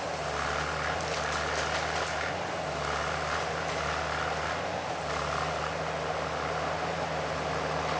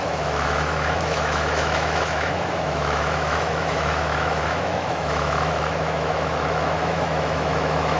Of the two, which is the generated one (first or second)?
second